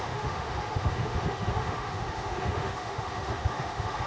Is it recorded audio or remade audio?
remade